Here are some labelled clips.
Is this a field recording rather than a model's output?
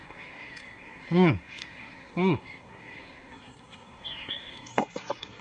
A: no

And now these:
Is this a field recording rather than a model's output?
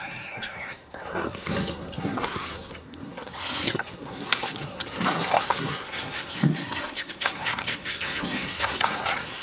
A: no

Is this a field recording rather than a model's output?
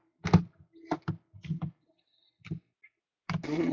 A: yes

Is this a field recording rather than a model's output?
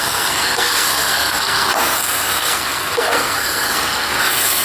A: no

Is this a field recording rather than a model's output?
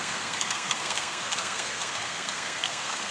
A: no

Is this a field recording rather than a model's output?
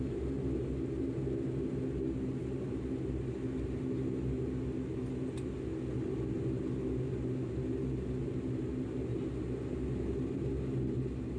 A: yes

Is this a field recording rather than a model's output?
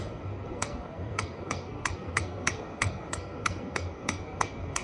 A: no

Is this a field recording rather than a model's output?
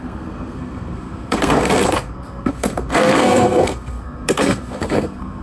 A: no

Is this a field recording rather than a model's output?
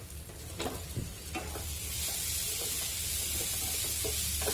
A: yes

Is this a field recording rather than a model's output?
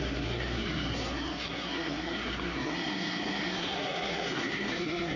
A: no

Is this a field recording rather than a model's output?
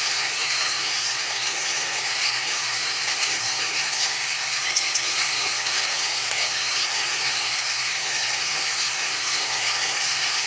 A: no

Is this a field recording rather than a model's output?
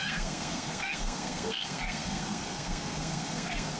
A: no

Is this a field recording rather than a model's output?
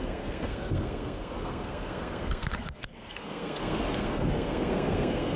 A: no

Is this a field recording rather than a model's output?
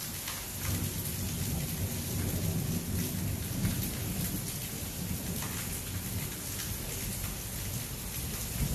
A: yes